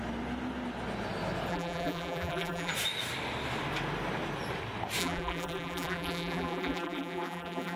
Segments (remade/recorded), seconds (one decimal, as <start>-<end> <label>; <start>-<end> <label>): 0.0-1.5 recorded; 1.5-2.7 remade; 2.7-5.0 recorded; 5.0-7.8 remade